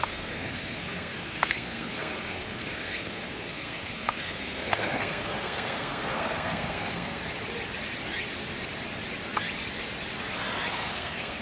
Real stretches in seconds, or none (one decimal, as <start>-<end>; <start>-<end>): 7.2-10.7

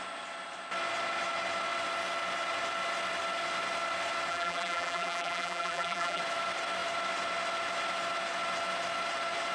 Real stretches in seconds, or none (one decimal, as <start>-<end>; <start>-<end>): 0.0-4.3; 6.2-9.5

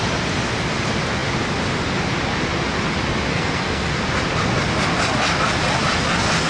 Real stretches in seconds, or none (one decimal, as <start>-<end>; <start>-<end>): 0.0-3.3; 3.9-6.5

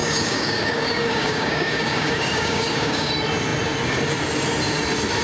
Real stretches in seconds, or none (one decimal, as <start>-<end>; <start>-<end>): 3.1-5.2

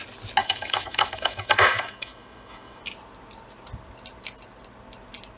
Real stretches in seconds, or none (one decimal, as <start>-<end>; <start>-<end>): 0.0-0.4; 2.8-5.4